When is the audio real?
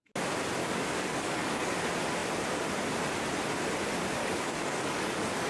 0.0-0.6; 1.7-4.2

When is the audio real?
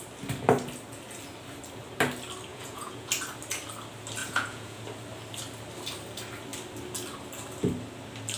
0.0-2.5; 3.1-4.2; 4.8-8.4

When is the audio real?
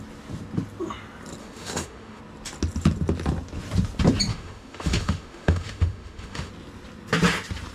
0.0-1.4; 2.2-4.3; 6.5-7.7